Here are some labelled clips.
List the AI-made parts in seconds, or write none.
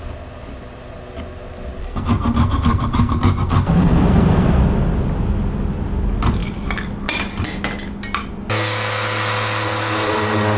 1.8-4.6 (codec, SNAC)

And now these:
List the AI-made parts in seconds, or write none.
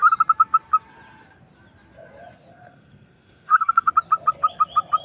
2.5-3.9 (codec, SNAC)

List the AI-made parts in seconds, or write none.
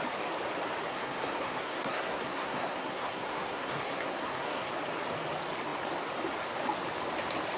0.9-4.7 (codec, SNAC)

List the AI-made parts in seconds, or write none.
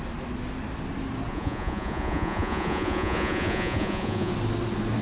1.3-4.3 (vocoder, Vocos)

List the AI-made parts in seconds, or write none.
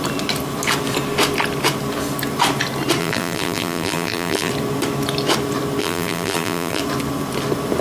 3.0-4.5 (vocoder, BigVGAN v2); 5.8-6.8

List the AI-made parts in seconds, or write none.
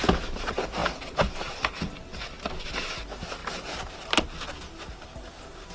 3.4-3.9 (vocoder, BigVGAN v2)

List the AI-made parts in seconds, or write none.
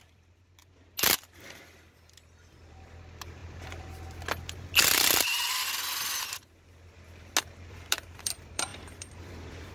0.0-0.6 (vocoder, BigVGAN v2); 2.7-3.4; 7.7-9.7